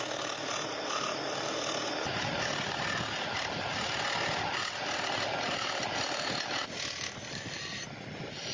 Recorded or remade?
recorded